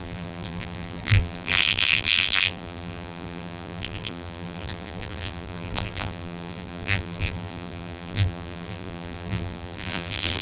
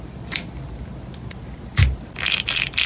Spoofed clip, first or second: first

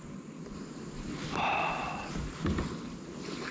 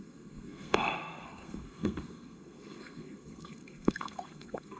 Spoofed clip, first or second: second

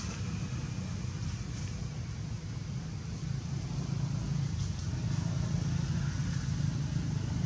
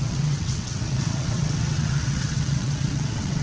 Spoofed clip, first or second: second